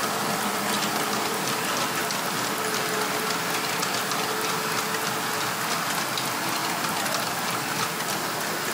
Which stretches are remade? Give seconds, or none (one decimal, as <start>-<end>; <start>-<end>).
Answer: none